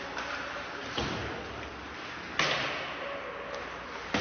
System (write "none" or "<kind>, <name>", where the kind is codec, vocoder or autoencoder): none